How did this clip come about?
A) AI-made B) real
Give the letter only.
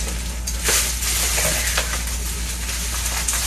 B